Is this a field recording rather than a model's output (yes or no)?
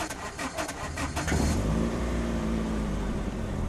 no